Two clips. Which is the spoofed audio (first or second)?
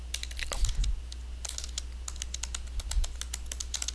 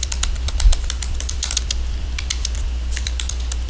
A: second